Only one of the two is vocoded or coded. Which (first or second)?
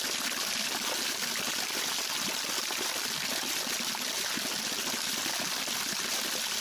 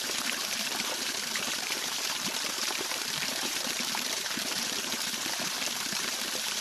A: second